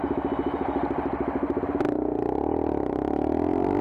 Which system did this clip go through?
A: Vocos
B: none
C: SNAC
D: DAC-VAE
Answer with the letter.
B